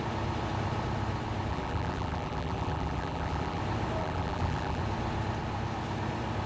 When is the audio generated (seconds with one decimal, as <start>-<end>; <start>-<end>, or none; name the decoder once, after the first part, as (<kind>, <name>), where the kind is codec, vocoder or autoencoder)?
1.5-3.6 (vocoder, BigVGAN v2); 4.0-4.8